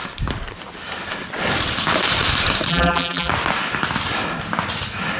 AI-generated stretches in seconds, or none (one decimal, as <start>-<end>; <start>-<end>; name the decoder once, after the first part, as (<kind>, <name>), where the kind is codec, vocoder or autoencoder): 2.7-3.3 (vocoder, BigVGAN v2)